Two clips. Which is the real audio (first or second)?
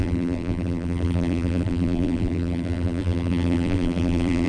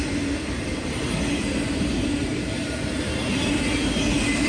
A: second